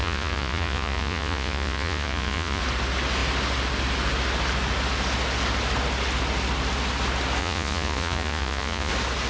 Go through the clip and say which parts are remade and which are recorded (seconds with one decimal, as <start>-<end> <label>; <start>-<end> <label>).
0.0-2.6 remade; 2.6-7.4 recorded; 7.4-8.9 remade; 8.9-9.3 recorded